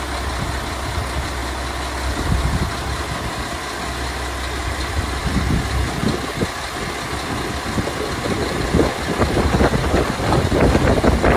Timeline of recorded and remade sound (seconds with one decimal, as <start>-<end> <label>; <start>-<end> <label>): 0.0-11.4 recorded